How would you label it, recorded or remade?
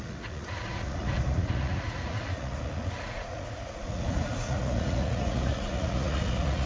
remade